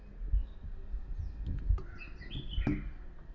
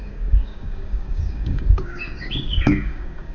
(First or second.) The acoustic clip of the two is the first